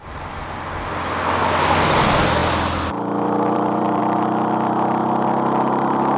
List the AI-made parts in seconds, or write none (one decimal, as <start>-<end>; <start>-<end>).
2.4-4.0